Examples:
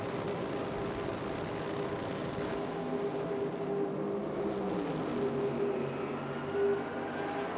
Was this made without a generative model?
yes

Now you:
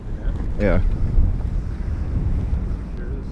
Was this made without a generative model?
yes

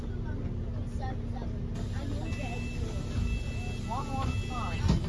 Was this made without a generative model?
yes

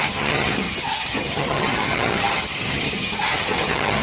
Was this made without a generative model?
no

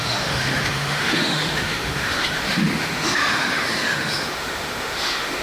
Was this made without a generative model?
no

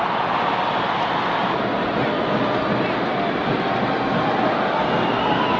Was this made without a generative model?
yes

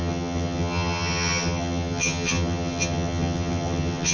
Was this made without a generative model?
no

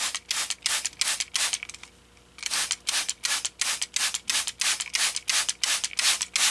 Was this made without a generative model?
yes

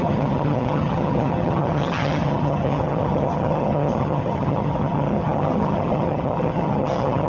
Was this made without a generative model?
no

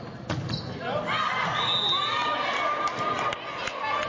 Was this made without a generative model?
yes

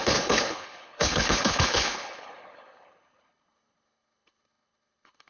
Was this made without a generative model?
no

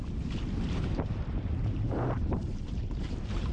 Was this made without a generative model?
no